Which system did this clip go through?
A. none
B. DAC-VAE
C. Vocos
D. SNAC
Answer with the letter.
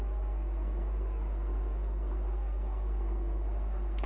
D